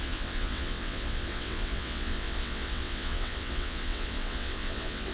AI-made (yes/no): yes